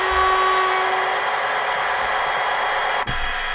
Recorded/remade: recorded